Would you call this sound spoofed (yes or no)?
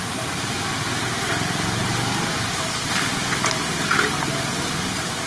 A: no